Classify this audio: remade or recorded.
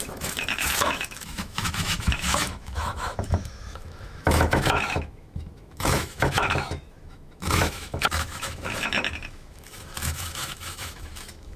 remade